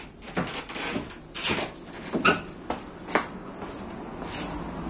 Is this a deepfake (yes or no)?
no